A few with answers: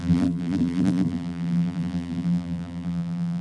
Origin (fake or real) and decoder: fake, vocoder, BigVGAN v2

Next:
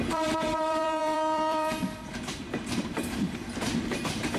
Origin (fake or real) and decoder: fake, vocoder, BigVGAN v2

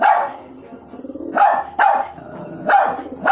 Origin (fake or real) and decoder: real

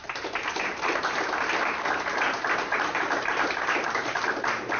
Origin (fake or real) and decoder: fake, vocoder, BigVGAN v2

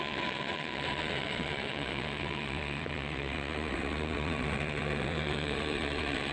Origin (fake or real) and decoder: fake, vocoder, WaveNeXt